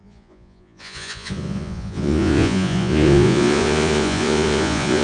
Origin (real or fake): fake